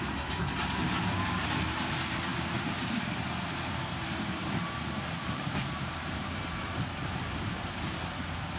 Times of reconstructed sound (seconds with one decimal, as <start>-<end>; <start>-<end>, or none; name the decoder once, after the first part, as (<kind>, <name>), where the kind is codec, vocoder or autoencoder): 2.3-6.4 (vocoder, BigVGAN v2)